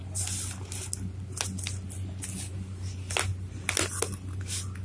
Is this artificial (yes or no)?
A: no